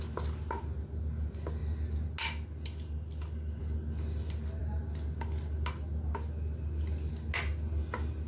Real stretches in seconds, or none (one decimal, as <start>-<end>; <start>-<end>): 0.0-8.3

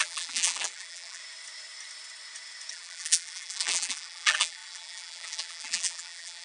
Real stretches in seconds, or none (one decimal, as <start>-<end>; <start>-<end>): 1.2-2.7